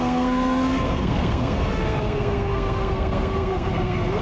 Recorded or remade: remade